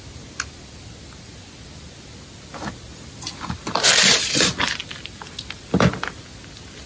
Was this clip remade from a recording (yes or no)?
no